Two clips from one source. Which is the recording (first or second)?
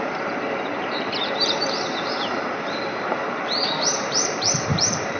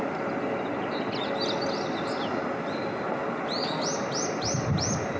second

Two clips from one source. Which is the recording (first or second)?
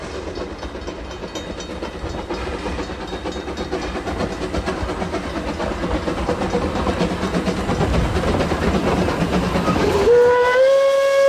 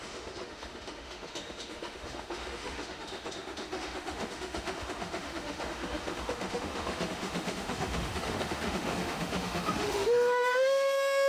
first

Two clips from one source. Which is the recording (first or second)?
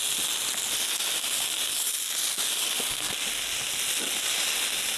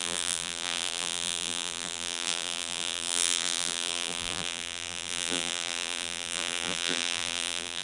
first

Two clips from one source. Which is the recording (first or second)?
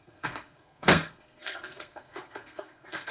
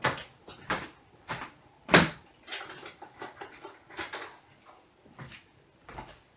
second